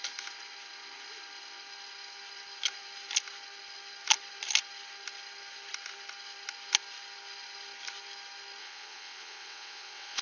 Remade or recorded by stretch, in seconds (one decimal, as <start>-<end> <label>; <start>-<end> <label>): 0.0-8.6 recorded; 8.6-10.2 remade